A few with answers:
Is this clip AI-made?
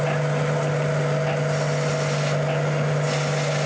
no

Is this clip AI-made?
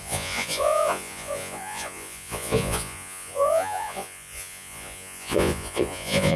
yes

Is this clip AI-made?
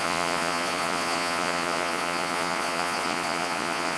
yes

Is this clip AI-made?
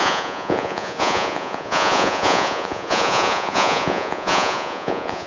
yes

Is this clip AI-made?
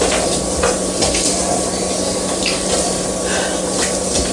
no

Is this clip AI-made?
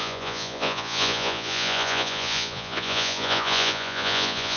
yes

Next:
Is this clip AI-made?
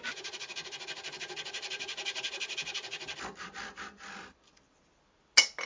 no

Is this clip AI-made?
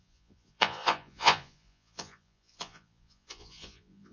yes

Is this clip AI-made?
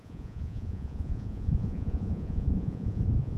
yes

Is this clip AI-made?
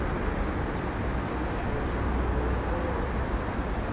no